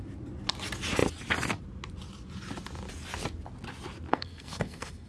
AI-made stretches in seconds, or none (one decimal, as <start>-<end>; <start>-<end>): 4.1-5.1